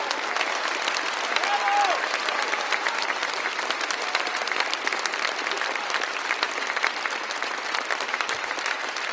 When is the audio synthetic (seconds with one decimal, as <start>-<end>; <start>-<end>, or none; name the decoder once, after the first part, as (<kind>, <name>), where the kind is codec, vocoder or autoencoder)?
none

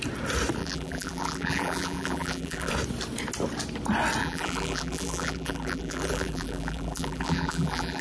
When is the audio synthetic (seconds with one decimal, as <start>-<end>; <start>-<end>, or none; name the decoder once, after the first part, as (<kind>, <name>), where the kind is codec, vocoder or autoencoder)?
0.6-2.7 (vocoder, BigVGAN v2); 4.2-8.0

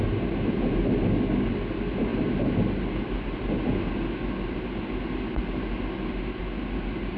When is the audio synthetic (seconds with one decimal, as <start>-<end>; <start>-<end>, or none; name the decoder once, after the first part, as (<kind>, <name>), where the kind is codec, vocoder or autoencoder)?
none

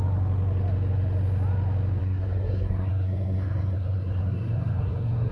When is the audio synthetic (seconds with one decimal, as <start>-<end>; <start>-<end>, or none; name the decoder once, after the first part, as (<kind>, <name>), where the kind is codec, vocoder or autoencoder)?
2.0-5.3 (codec, SNAC)

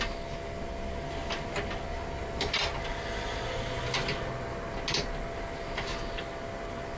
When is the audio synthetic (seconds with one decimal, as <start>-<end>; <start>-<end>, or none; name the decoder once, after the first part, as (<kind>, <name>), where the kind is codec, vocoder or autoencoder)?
none

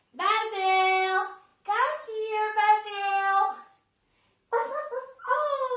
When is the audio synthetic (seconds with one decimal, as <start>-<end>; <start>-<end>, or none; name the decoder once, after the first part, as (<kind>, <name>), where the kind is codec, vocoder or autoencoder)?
none

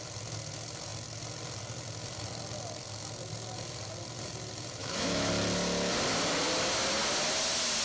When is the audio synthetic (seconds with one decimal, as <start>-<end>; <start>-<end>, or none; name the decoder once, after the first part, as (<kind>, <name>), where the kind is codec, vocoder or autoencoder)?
4.8-5.3 (autoencoder, DAC-VAE)

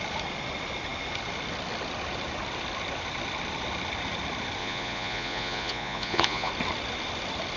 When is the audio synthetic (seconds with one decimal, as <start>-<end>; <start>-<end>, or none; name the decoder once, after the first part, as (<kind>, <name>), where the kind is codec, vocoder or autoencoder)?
4.6-6.5 (vocoder, Vocos)